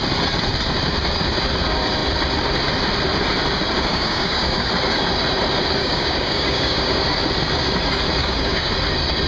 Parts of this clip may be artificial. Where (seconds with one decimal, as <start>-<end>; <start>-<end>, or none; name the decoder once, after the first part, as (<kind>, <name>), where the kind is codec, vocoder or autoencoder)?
3.9-4.7 (codec, DAC); 5.8-7.0; 8.2-8.7